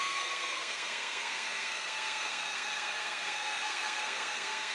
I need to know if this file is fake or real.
fake